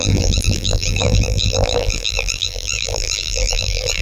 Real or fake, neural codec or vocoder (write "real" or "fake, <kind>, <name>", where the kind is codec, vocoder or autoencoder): fake, vocoder, BigVGAN v2